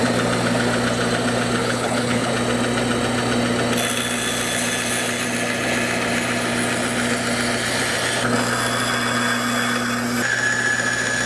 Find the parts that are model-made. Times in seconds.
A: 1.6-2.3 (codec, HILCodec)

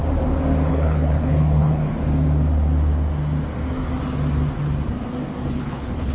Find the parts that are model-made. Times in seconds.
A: 0.7-1.8 (codec, HILCodec); 5.5-6.1

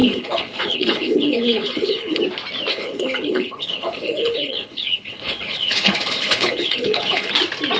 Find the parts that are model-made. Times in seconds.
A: 0.0-2.2 (codec, HILCodec); 2.7-7.3